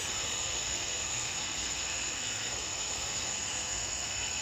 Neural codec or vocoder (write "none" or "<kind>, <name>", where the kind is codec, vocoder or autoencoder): codec, SNAC